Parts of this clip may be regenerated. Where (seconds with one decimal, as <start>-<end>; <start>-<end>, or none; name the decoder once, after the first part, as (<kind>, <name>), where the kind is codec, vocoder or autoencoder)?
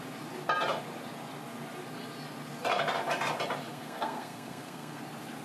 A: 3.7-5.0 (codec, SNAC)